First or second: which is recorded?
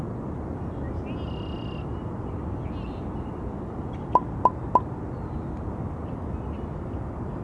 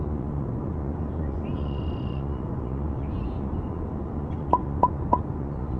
first